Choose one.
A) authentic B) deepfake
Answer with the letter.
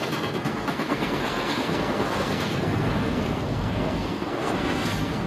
B